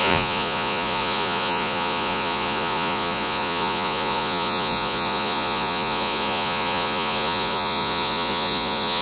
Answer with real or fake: fake